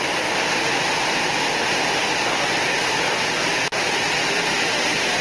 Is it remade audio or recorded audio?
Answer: recorded